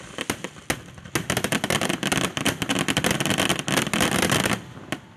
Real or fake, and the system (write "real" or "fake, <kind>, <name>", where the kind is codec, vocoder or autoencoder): real